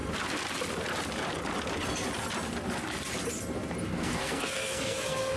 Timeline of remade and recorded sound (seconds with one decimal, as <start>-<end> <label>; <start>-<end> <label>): 0.0-3.9 recorded; 3.9-5.4 remade